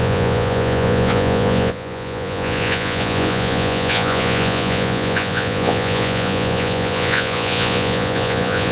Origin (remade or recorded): remade